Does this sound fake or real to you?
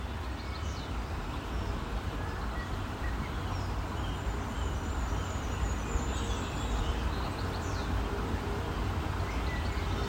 real